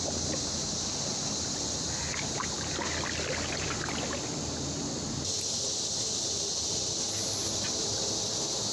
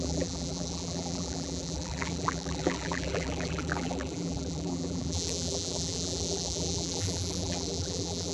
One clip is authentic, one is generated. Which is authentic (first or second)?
first